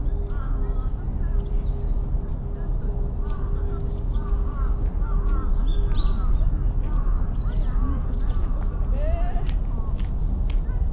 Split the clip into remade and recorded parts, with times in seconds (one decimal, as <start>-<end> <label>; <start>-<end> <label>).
0.0-10.9 recorded